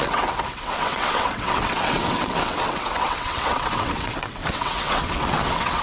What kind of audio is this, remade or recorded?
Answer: remade